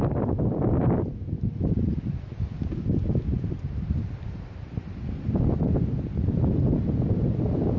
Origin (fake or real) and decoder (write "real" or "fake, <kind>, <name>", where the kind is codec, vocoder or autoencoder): real